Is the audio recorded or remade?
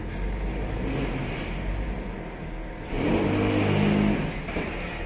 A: recorded